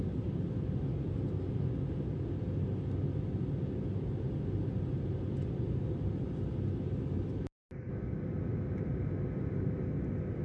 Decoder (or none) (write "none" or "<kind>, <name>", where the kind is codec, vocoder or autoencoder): none